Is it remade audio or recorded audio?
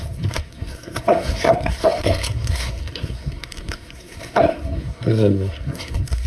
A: remade